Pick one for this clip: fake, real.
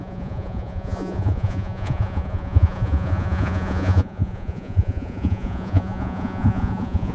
fake